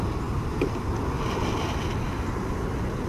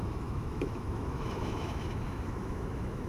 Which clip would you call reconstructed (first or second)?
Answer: second